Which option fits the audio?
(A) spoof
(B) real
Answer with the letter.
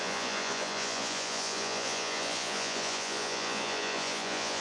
A